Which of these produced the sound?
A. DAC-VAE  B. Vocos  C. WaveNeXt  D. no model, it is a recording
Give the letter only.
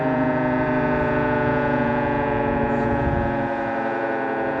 B